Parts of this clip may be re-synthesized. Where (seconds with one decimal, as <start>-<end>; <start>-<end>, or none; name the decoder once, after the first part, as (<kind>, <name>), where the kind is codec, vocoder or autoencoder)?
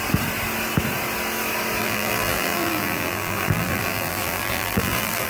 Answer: 1.8-5.3 (vocoder, BigVGAN v2)